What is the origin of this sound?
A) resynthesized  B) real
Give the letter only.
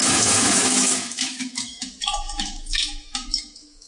A